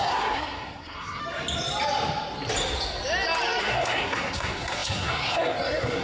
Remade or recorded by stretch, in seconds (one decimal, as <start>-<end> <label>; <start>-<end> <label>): 0.0-1.2 remade; 1.2-3.6 recorded; 3.6-6.0 remade